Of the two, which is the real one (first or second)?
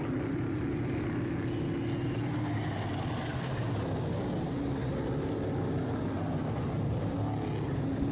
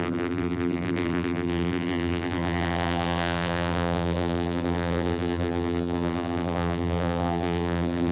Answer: first